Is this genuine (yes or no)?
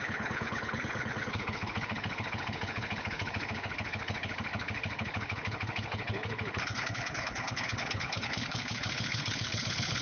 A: no